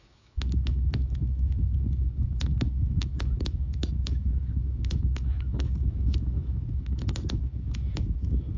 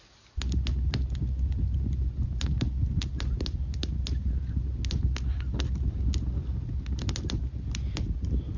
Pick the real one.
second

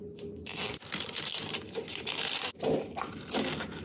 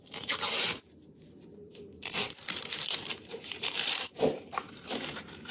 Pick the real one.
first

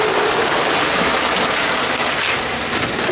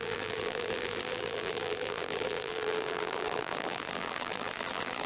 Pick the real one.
first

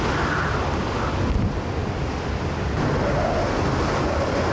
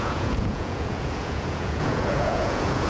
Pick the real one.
first